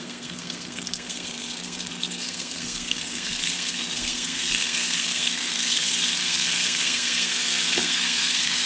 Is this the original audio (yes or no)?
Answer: no